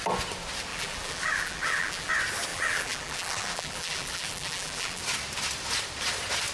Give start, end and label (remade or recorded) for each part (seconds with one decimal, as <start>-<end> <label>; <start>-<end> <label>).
0.0-0.7 recorded; 0.7-2.1 remade; 2.1-2.5 recorded; 2.5-5.0 remade; 5.0-6.5 recorded